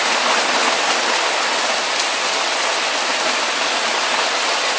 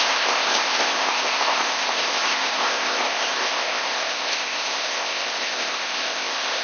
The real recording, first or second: first